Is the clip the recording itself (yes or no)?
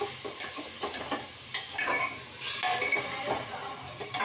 yes